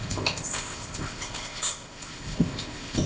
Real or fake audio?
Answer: fake